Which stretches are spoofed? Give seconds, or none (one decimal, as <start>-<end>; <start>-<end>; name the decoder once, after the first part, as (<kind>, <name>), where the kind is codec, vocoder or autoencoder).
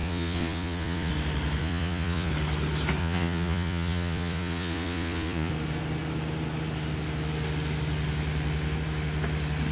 0.0-1.1 (vocoder, Vocos); 1.6-2.3; 3.0-5.5